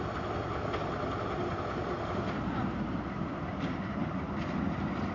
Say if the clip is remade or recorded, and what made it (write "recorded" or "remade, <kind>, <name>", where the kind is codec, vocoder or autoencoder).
recorded